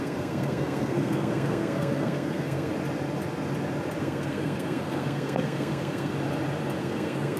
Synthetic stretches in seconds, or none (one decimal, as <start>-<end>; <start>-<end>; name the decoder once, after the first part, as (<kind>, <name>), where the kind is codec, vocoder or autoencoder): 0.0-2.7 (codec, SNAC); 4.0-6.1; 6.8-7.4